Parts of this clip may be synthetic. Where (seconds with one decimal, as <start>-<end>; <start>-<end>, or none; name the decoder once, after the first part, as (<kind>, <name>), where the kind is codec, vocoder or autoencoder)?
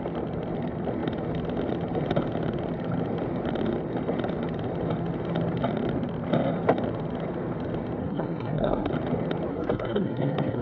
8.0-8.9 (codec, SNAC); 9.5-10.6